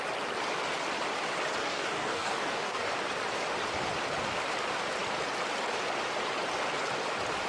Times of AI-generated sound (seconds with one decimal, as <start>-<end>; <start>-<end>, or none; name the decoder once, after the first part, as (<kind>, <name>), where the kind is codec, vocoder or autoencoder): 1.6-2.9 (codec, DAC)